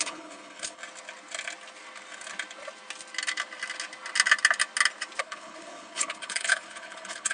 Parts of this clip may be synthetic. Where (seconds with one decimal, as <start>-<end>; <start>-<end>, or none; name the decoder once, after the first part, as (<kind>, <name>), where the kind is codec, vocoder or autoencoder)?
0.0-0.8 (codec, HILCodec); 5.2-7.3